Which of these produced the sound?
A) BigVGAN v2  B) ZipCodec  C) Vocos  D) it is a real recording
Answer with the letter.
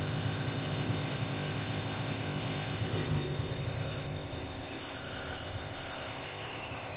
B